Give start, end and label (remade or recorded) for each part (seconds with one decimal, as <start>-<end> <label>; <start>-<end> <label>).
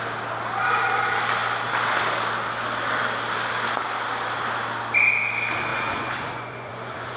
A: 0.0-5.7 recorded; 5.7-7.2 remade